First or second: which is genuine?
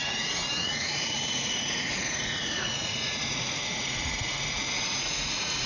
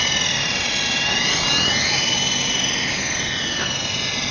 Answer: second